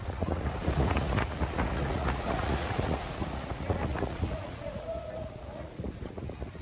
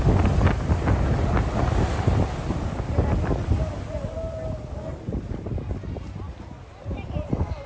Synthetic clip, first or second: first